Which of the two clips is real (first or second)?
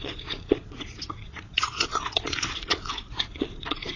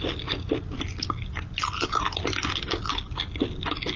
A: second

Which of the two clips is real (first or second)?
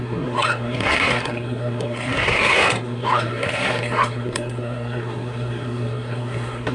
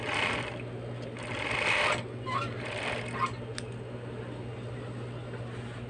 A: second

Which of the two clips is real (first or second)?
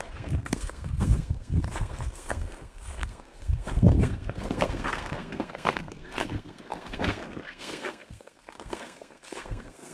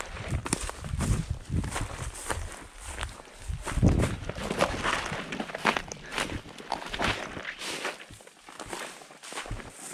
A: second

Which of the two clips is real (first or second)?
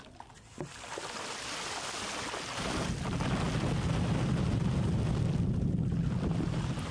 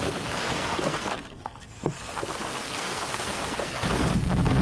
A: first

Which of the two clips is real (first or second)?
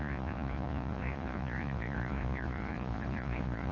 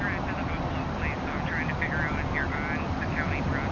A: second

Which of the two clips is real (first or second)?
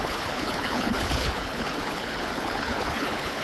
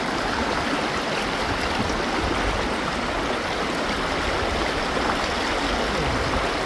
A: second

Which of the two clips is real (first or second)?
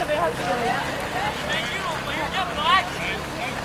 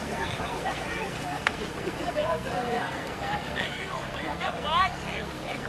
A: first